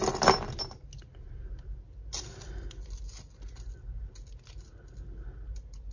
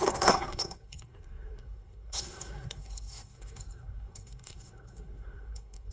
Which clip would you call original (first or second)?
first